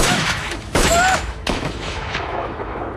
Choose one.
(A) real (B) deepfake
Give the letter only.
B